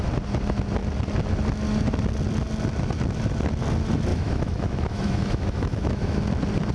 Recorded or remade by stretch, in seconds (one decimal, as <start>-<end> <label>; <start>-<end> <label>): 0.0-4.1 recorded; 4.1-6.2 remade; 6.2-6.7 recorded